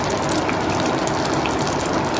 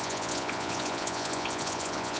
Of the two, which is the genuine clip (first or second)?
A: first